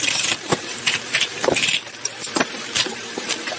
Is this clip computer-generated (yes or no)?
yes